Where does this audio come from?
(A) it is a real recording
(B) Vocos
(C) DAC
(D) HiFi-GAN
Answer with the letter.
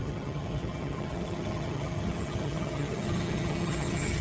D